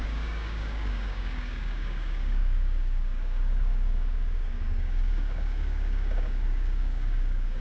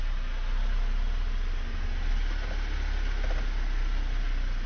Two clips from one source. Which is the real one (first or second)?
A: second